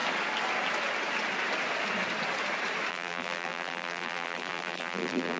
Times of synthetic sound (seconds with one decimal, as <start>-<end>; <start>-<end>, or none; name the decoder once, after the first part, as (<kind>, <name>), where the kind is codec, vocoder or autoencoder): 2.9-5.4 (vocoder, BigVGAN v2)